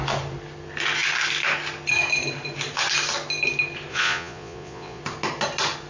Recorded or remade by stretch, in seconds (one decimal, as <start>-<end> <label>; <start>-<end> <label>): 0.0-3.9 recorded; 3.9-5.0 remade; 5.0-5.9 recorded